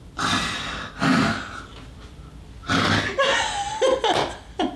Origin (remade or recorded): recorded